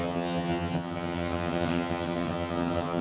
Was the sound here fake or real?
fake